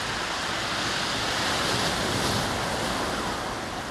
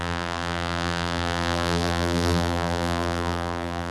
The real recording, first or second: first